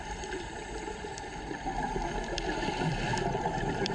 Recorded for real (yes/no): yes